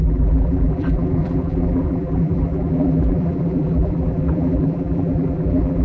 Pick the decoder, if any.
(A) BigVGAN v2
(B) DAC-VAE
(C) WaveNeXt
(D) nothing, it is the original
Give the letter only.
A